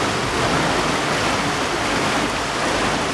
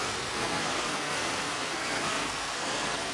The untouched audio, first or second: first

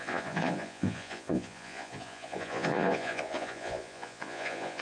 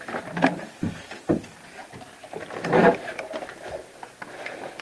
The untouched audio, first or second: second